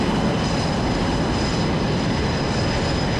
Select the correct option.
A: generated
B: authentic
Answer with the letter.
B